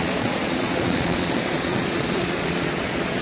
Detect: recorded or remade remade